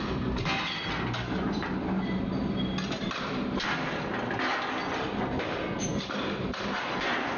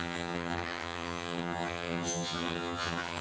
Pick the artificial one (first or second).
second